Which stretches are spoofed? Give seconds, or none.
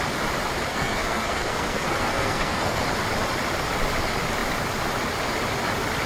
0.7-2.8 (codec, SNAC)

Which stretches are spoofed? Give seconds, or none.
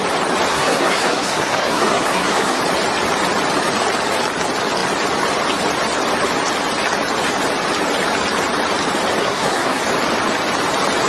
0.5-2.6 (codec, SNAC); 9.2-9.8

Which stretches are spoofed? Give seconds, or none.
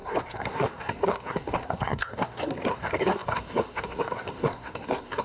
0.0-5.2 (codec, SNAC)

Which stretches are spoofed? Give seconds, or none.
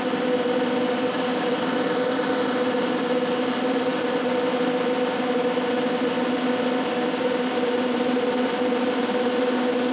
none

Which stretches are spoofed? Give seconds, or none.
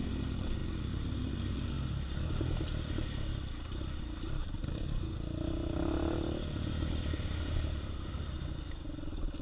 none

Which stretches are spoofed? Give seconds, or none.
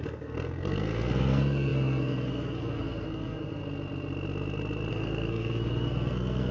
0.0-3.6 (codec, SNAC); 4.9-6.5